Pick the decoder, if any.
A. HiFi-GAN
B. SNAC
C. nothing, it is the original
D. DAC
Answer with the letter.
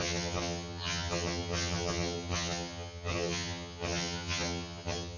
A